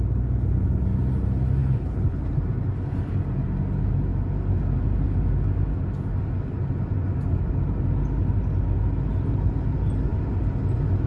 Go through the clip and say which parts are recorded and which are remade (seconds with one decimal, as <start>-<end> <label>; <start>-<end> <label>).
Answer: 0.0-1.6 recorded; 1.6-2.2 remade; 2.2-11.1 recorded